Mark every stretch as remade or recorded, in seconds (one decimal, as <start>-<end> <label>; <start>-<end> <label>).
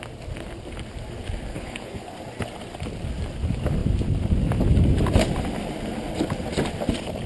0.0-1.5 recorded; 1.5-2.1 remade; 2.1-7.3 recorded